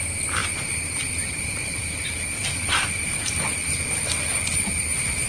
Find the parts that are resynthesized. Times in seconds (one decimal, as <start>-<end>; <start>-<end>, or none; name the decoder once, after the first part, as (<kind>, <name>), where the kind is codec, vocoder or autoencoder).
none